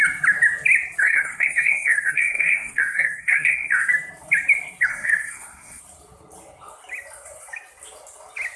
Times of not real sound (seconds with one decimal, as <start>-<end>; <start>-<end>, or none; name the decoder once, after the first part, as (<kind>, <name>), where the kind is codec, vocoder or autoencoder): 1.0-3.9 (codec, SNAC); 4.9-5.8